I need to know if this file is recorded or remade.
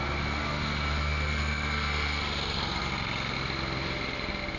recorded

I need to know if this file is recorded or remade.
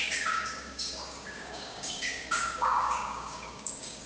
remade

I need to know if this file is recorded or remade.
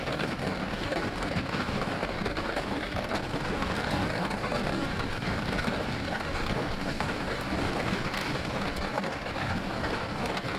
remade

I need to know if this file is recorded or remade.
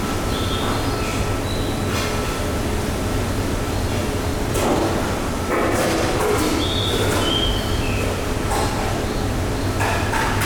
recorded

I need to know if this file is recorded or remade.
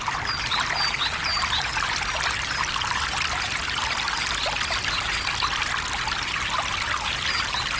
recorded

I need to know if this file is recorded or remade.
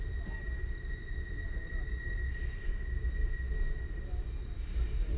recorded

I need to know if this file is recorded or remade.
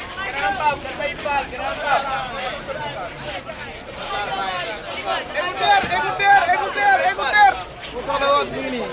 recorded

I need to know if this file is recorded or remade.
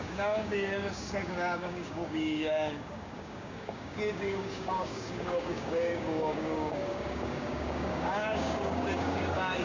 remade